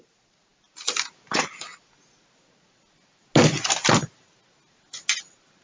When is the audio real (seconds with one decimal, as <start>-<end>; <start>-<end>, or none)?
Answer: 0.0-5.6